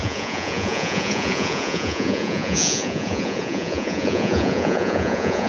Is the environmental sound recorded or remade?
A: remade